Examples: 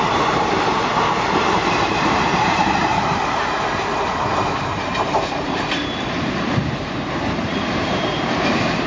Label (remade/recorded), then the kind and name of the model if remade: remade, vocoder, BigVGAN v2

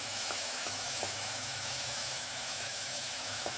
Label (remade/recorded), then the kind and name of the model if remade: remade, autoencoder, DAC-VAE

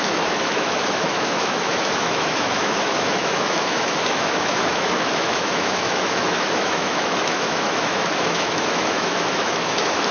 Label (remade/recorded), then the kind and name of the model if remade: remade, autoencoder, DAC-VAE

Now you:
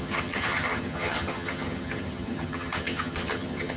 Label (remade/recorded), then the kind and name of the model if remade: remade, vocoder, HiFi-GAN